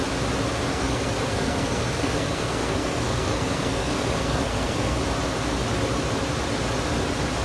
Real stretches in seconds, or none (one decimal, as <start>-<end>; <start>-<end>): 0.0-0.7; 5.0-7.4